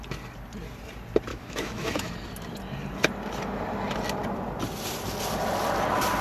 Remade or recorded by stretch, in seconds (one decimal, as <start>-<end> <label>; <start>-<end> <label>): 0.0-1.3 recorded; 1.3-2.1 remade; 2.1-6.2 recorded